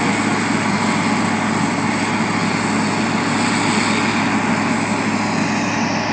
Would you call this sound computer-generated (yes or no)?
no